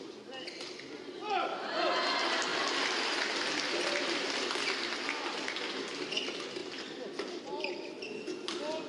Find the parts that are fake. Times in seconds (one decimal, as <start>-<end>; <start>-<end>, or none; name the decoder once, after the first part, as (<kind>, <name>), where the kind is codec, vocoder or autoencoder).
2.5-4.7 (vocoder, BigVGAN v2)